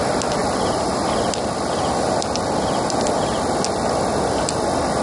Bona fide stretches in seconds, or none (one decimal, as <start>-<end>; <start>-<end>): 0.0-5.0